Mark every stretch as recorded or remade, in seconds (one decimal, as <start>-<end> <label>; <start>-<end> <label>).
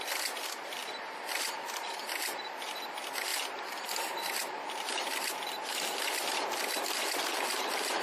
0.0-8.0 remade